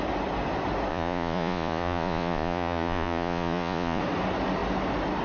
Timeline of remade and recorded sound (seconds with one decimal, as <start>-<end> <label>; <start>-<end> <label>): 0.0-0.9 recorded; 0.9-4.0 remade; 4.0-5.2 recorded